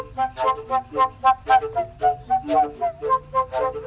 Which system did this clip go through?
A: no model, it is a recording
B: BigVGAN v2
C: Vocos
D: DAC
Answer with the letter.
A